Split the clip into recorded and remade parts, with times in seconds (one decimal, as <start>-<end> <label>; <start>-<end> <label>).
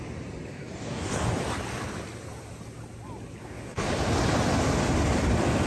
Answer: 0.0-0.5 recorded; 0.5-1.3 remade; 1.3-3.4 recorded; 3.4-3.9 remade; 3.9-5.7 recorded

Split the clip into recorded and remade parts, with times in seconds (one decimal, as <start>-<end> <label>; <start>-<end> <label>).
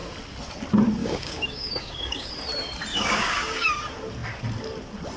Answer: 0.0-1.0 recorded; 1.0-2.3 remade; 2.3-2.9 recorded; 2.9-3.7 remade; 3.7-5.2 recorded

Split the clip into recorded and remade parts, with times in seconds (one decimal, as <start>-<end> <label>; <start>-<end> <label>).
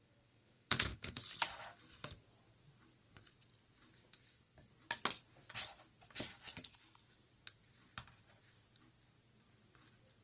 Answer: 0.0-1.2 remade; 1.2-4.1 recorded; 4.1-4.7 remade; 4.7-10.2 recorded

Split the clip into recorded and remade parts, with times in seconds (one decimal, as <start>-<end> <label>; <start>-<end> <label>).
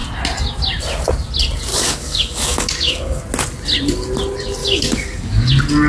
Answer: 0.0-1.7 recorded; 1.7-3.2 remade; 3.2-4.6 recorded; 4.6-5.5 remade; 5.5-5.9 recorded